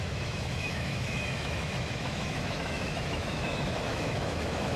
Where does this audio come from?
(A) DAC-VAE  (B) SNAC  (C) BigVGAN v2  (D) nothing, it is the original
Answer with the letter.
A